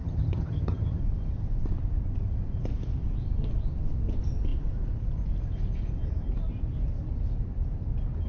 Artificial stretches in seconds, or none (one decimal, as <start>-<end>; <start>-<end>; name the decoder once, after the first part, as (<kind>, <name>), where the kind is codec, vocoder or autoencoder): 0.0-1.0 (vocoder, HiFi-GAN)